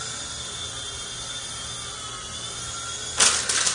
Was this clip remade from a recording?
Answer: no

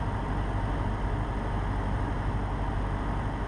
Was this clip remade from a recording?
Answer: no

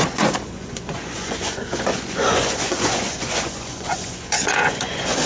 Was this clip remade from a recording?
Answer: yes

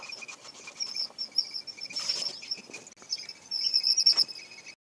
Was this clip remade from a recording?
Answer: no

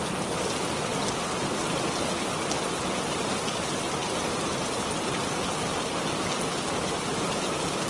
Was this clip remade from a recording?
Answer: no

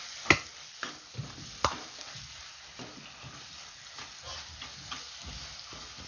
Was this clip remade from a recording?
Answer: no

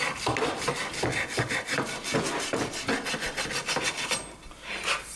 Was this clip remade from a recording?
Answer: no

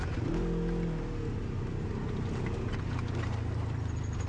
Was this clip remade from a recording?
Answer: no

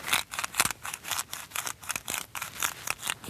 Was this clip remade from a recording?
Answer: no